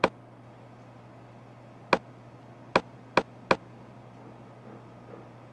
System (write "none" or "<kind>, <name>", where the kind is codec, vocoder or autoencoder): none